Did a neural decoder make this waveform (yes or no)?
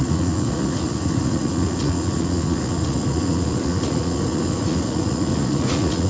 yes